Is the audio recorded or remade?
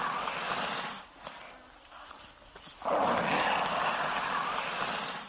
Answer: recorded